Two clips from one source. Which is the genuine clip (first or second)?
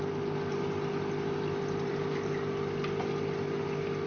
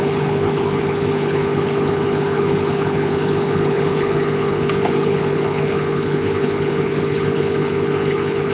first